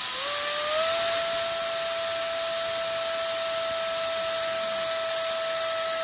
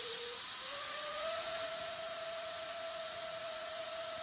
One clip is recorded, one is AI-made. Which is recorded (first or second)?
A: first